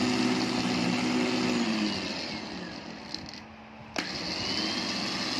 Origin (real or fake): real